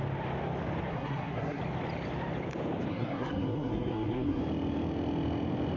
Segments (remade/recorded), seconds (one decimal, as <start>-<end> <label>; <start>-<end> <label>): 0.0-0.9 recorded; 0.9-1.6 remade; 1.6-2.9 recorded; 2.9-4.4 remade; 4.4-5.8 recorded